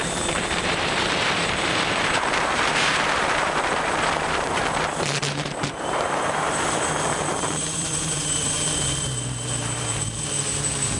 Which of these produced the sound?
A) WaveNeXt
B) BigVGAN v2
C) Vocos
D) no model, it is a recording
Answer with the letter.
B